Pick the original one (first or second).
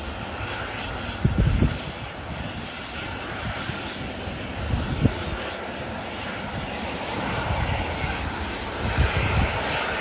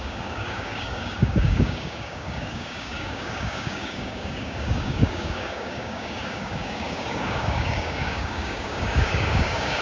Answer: first